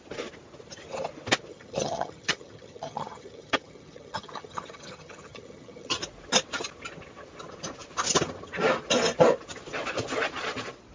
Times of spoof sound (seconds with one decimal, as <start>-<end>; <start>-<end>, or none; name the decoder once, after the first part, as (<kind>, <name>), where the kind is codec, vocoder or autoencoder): 1.5-6.0 (vocoder, HiFi-GAN)